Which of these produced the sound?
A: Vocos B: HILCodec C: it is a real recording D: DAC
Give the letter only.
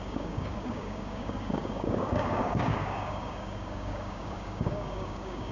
D